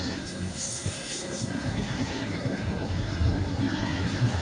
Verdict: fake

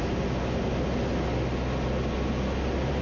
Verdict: real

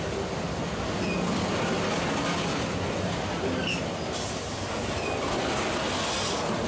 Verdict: real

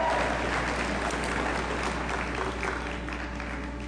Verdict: real